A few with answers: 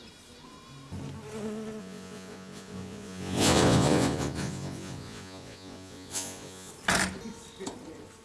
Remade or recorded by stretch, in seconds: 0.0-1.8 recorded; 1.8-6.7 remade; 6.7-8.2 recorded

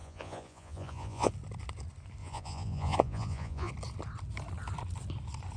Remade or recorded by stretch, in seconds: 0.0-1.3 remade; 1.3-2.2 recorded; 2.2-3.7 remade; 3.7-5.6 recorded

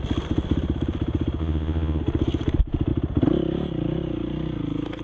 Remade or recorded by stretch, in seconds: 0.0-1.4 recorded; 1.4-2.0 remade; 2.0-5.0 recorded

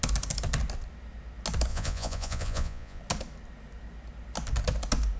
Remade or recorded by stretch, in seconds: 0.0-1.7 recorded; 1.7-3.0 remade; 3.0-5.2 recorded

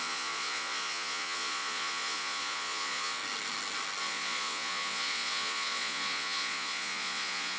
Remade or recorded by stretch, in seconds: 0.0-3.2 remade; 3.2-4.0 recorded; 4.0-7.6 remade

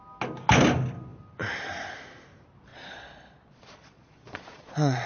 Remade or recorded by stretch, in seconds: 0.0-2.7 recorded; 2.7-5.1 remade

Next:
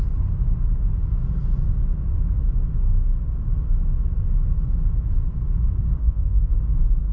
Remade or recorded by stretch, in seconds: 0.0-6.0 recorded; 6.0-6.5 remade; 6.5-7.1 recorded

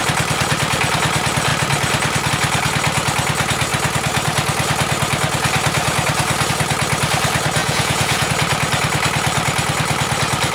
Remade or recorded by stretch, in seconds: 0.0-7.6 recorded; 7.6-8.3 remade; 8.3-10.5 recorded